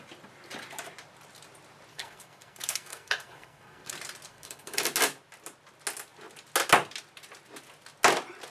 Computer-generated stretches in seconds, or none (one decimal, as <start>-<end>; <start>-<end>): 1.9-3.9; 4.3-4.8

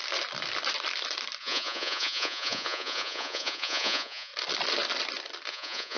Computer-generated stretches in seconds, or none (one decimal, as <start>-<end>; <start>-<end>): 1.4-4.3; 5.5-6.0